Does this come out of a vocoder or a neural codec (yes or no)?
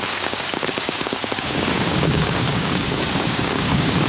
yes